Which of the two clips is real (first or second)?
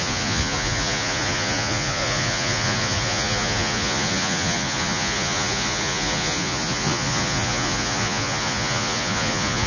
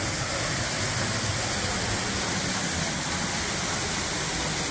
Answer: second